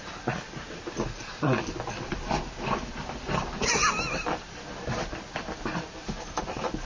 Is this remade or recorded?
recorded